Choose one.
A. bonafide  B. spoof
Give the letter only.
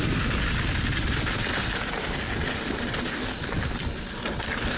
A